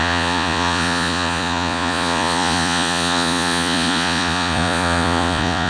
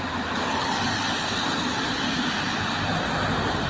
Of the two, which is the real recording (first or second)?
second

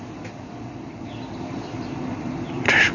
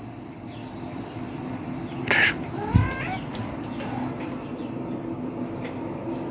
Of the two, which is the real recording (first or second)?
second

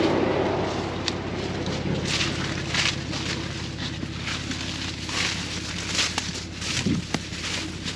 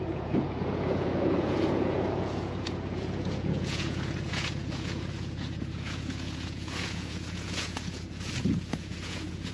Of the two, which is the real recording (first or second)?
first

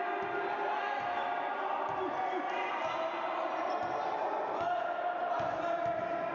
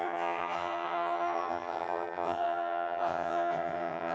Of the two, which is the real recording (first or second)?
first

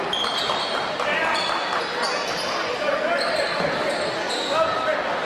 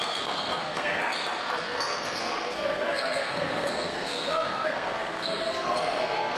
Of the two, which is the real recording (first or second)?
first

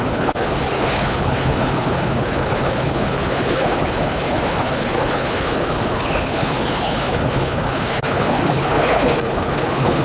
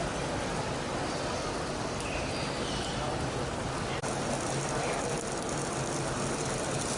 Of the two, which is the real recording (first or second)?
second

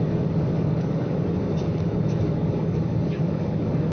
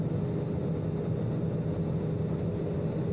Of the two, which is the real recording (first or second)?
second